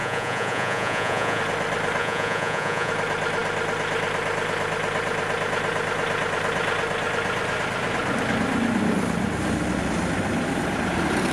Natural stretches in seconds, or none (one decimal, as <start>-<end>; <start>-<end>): 1.4-2.0; 2.9-11.3